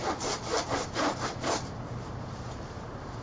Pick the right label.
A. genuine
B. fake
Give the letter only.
B